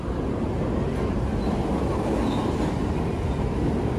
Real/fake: real